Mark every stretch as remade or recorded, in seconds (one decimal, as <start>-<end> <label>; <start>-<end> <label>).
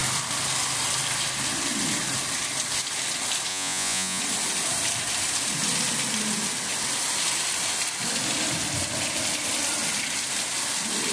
0.0-3.5 recorded; 3.5-4.2 remade; 4.2-11.1 recorded